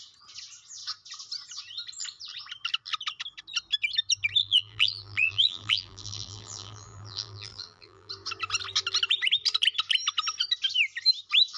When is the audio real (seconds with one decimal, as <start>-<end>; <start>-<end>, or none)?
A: 0.0-4.4; 8.1-11.6

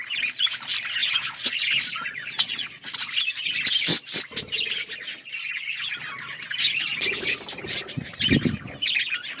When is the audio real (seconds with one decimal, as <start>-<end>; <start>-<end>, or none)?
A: 0.0-1.0; 3.1-9.4

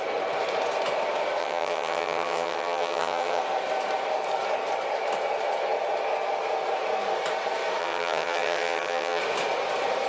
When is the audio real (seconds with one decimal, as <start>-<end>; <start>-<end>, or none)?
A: 0.0-1.4; 3.4-7.8; 9.2-10.1

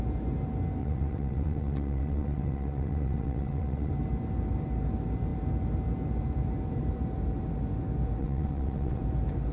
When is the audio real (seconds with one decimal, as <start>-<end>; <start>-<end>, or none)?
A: 0.0-0.8; 3.9-8.2; 9.0-9.5

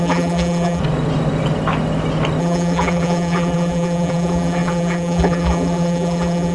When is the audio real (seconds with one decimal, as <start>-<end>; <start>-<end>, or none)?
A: 0.8-2.4

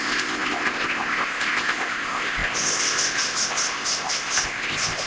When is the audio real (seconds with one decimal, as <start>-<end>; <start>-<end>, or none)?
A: none